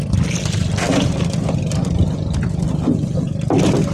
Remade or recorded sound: recorded